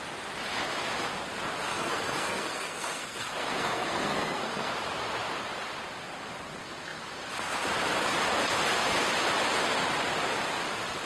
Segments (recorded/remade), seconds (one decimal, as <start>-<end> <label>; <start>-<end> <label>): 0.0-1.7 recorded; 1.7-4.7 remade; 4.7-11.1 recorded